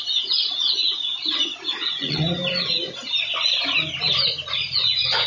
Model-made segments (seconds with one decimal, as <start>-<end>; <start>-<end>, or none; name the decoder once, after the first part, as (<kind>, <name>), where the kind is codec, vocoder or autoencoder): 0.0-2.4 (vocoder, Vocos); 4.5-5.3